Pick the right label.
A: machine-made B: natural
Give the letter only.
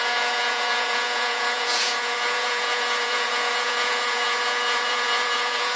A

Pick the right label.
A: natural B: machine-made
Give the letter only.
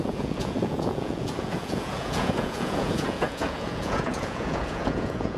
B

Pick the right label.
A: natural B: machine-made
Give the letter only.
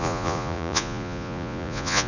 B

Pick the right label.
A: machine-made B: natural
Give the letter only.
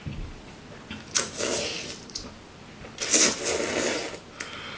B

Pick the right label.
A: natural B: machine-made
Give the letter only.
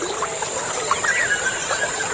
A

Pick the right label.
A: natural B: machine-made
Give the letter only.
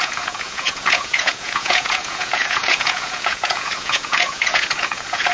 B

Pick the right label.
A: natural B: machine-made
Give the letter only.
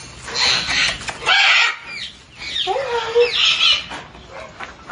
A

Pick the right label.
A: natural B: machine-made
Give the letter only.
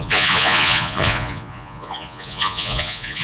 B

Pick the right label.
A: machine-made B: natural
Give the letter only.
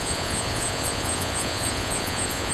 A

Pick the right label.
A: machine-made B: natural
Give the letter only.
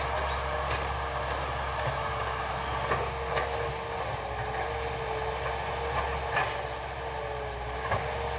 B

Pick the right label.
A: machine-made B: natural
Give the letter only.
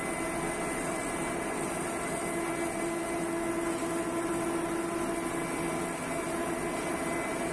B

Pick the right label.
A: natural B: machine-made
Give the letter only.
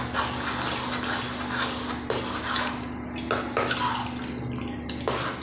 A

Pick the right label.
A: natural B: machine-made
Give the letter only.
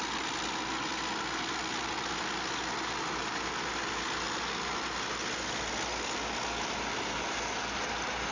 A